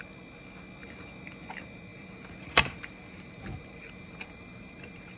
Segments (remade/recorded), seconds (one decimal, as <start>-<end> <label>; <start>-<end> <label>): 0.0-1.9 recorded; 1.9-5.2 remade